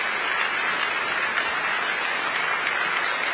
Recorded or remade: recorded